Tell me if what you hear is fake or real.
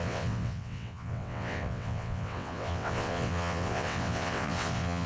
fake